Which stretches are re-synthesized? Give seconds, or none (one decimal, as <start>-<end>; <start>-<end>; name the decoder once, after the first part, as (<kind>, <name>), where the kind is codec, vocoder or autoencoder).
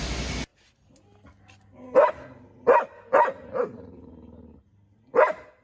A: none